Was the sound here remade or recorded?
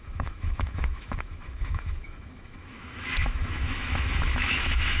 remade